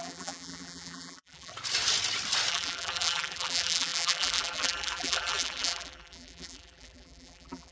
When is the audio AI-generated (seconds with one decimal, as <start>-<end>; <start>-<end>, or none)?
0.0-1.5; 2.5-7.7